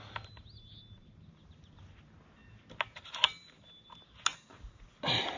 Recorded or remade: recorded